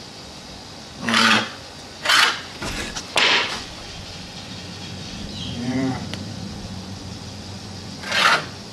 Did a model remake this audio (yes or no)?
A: yes